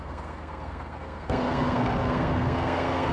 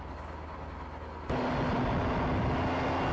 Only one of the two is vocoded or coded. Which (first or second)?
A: first